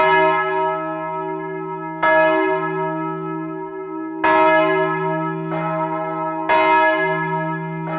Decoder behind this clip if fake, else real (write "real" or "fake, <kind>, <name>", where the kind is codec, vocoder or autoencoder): real